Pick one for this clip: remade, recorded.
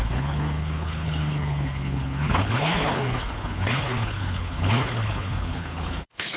remade